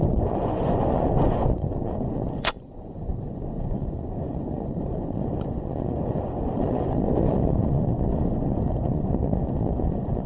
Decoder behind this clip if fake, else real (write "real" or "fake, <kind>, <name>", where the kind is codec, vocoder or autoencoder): fake, vocoder, Vocos